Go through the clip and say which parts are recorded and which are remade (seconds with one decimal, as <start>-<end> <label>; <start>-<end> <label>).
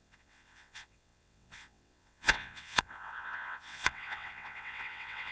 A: 0.0-5.3 remade